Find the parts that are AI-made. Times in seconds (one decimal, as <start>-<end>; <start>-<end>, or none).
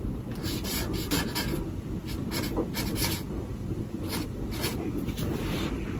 0.4-1.1; 4.7-5.4